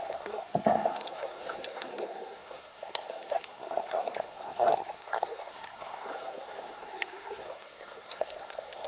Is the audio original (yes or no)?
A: no